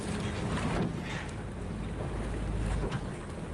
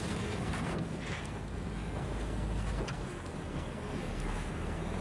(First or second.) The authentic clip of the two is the first